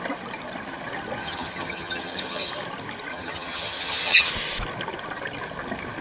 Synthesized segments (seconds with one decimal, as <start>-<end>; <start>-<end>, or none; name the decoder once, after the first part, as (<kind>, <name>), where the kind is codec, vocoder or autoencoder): 1.2-2.5 (vocoder, HiFi-GAN); 3.1-4.3